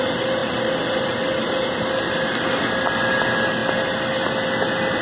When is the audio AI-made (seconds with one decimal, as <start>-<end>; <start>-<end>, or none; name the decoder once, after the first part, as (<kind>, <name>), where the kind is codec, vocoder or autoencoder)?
0.0-3.6 (vocoder, BigVGAN v2)